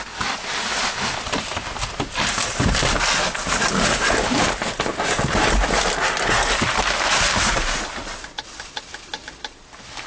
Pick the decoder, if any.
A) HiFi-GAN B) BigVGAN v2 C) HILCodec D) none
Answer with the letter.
D